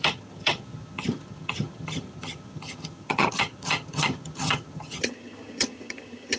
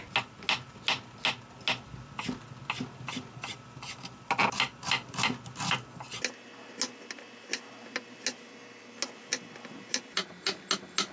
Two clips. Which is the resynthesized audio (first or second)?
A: first